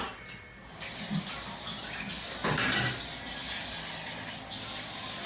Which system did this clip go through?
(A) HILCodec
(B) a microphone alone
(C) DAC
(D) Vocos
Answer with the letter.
B